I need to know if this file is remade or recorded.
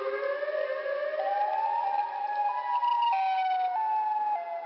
recorded